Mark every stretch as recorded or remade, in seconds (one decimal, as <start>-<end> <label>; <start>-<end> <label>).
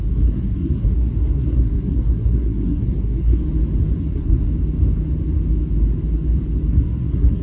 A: 0.0-3.4 remade; 3.4-4.0 recorded; 4.0-4.5 remade; 4.5-6.7 recorded; 6.7-7.4 remade